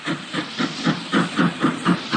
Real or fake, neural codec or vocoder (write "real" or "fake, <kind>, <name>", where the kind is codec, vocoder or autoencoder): fake, vocoder, BigVGAN v2